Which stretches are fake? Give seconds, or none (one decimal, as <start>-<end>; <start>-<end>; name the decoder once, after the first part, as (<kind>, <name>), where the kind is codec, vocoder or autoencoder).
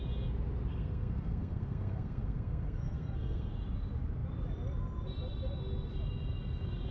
0.7-3.5 (codec, SNAC)